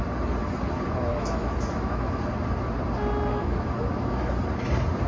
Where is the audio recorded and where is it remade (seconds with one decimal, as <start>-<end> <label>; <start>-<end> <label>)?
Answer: 0.0-1.1 recorded; 1.1-2.2 remade; 2.2-3.3 recorded; 3.3-4.3 remade; 4.3-5.1 recorded